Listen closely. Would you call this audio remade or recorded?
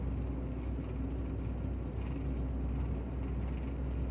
recorded